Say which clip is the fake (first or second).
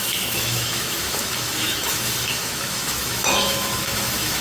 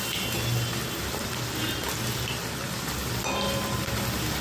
first